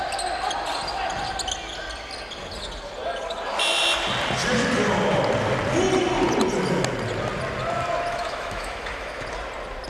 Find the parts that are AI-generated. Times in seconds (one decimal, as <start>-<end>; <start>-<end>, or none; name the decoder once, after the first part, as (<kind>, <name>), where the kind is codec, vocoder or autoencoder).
8.1-9.2 (autoencoder, DAC-VAE)